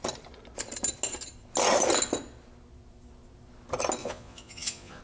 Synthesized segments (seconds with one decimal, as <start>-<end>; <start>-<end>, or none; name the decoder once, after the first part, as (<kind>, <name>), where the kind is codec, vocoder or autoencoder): 4.0-5.0 (vocoder, Vocos)